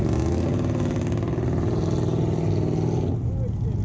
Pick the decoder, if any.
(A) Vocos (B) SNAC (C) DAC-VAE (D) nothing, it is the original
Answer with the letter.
D